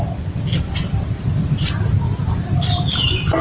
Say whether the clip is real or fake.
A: real